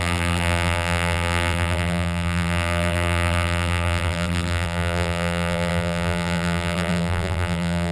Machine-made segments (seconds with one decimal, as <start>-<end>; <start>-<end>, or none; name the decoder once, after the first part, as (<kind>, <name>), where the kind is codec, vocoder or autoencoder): 0.0-7.9 (vocoder, BigVGAN v2)